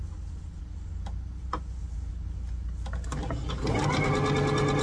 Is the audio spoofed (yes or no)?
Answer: no